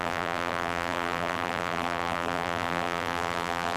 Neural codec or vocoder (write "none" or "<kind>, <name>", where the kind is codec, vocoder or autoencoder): vocoder, BigVGAN v2